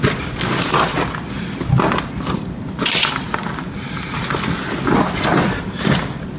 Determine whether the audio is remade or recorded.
recorded